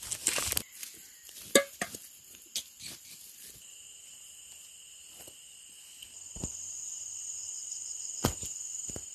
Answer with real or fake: real